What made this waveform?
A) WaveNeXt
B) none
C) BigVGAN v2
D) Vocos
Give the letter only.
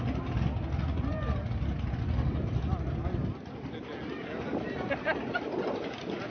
B